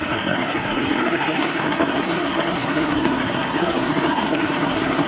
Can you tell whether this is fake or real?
fake